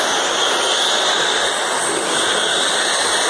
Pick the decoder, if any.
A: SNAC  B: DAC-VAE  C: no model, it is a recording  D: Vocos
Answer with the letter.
C